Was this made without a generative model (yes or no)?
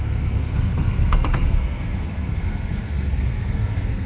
no